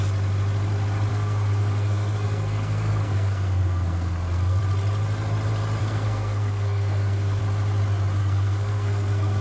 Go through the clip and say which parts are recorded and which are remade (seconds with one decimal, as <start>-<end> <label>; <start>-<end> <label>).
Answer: 0.0-1.1 recorded; 1.1-4.6 remade; 4.6-5.8 recorded; 5.8-7.4 remade; 7.4-8.2 recorded; 8.2-9.4 remade